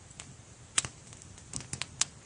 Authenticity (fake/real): real